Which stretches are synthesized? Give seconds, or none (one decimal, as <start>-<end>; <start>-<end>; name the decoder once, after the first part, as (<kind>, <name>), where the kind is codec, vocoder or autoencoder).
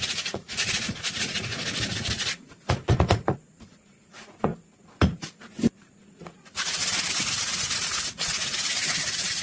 0.0-1.5 (vocoder, Vocos); 2.0-4.5; 5.9-6.8; 7.4-9.4